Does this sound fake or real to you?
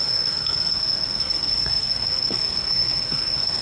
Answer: fake